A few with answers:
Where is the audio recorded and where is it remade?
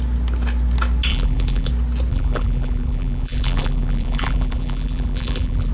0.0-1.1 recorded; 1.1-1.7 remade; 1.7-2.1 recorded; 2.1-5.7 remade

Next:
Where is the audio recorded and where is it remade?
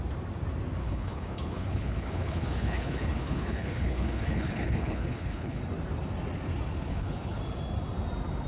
0.0-0.8 recorded; 0.8-5.6 remade; 5.6-6.9 recorded; 6.9-7.4 remade; 7.4-8.5 recorded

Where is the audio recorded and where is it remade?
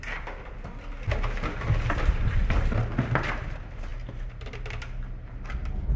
0.0-6.0 recorded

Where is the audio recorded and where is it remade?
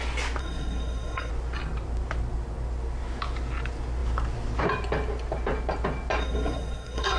0.0-0.4 recorded; 0.4-1.3 remade; 1.3-6.2 recorded; 6.2-7.2 remade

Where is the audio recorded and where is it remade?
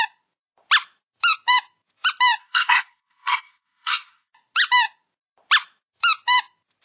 0.0-2.4 recorded; 2.4-4.3 remade; 4.3-6.8 recorded